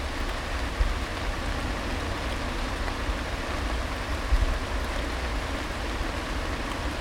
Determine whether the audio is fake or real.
real